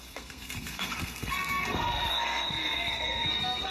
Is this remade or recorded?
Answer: remade